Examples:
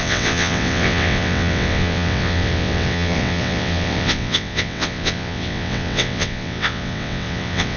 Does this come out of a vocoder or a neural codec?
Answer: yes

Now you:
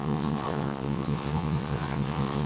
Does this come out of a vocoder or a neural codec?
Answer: yes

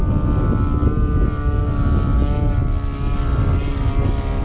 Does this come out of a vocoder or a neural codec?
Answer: no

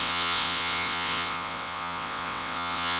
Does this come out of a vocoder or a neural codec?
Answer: yes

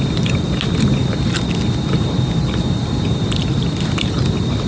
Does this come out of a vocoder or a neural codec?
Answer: no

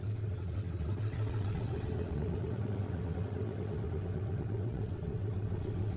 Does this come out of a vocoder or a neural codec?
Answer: yes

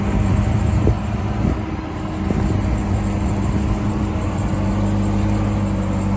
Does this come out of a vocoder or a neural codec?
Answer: no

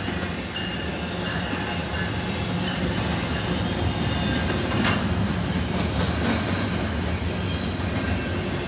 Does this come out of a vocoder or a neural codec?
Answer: no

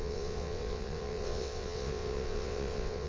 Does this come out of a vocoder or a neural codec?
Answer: yes